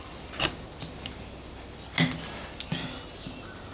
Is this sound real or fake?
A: real